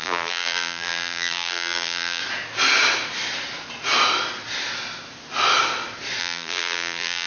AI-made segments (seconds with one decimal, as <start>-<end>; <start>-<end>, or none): 0.0-2.2; 6.2-7.3